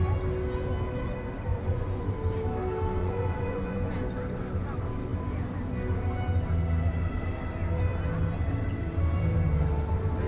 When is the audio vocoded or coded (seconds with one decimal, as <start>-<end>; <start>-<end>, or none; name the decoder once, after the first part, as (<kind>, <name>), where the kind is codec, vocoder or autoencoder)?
1.5-2.1 (vocoder, Vocos); 3.0-3.9